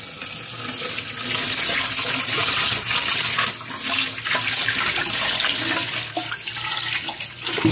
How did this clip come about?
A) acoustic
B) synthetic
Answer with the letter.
A